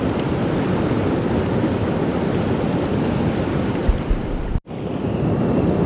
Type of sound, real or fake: real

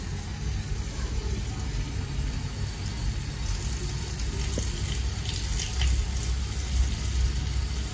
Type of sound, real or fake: real